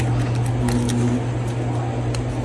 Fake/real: real